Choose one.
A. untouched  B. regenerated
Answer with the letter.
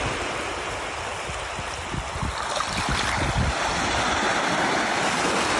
A